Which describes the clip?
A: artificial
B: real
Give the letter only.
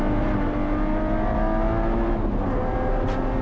B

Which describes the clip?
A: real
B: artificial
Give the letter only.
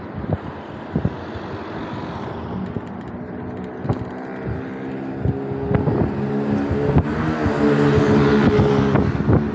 A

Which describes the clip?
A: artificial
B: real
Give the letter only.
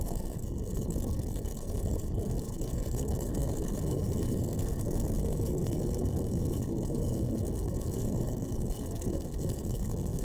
A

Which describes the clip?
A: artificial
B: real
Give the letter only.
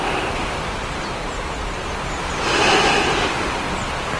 B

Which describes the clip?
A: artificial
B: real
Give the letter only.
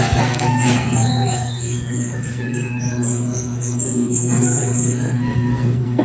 A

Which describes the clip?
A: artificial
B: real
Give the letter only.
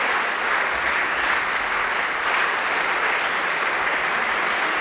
B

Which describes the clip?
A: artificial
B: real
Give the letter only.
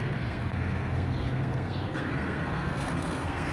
A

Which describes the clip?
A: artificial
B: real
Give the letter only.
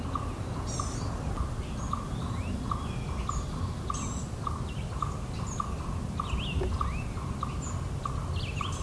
B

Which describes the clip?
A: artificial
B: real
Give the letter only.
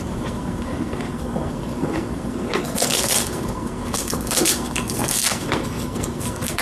A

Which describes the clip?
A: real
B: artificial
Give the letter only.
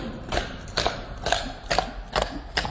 A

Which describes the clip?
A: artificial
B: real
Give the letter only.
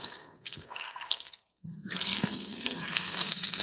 A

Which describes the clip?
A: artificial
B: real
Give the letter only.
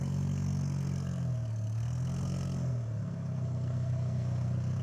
A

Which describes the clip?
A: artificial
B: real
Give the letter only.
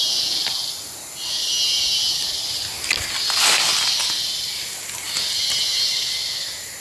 B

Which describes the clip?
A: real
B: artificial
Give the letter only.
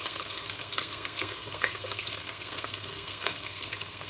B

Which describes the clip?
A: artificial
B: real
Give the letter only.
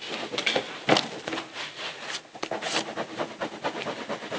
B